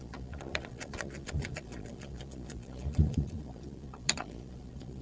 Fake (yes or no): yes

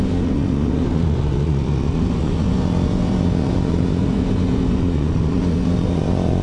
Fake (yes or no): yes